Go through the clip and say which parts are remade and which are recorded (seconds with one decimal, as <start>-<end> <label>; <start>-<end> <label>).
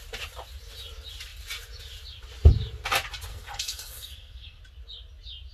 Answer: 0.0-3.3 recorded; 3.3-4.6 remade; 4.6-5.5 recorded